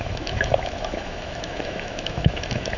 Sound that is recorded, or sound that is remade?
remade